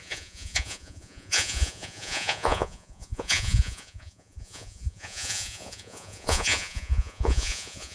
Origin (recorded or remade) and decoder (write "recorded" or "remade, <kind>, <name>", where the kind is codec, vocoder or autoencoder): remade, vocoder, Vocos